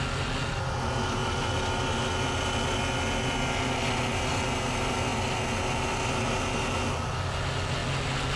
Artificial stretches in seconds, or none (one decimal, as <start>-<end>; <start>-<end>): none